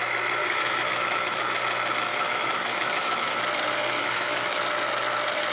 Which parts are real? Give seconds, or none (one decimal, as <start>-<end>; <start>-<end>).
0.0-0.4; 1.4-2.1; 3.4-4.0; 4.6-5.5